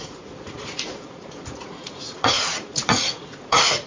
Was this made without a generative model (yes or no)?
no